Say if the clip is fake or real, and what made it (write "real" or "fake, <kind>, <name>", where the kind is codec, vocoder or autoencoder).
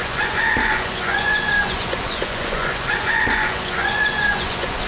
fake, vocoder, Vocos